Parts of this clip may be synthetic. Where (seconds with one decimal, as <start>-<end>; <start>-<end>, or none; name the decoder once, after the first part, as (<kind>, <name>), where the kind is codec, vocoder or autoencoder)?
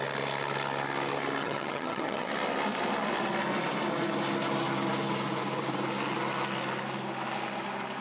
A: 1.4-2.3 (vocoder, HiFi-GAN)